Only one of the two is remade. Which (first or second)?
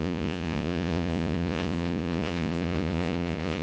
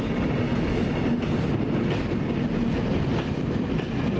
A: first